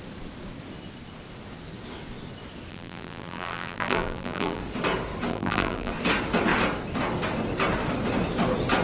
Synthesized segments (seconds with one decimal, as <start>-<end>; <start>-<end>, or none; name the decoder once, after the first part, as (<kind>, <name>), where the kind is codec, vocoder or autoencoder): 2.7-4.6 (vocoder, BigVGAN v2); 5.3-5.9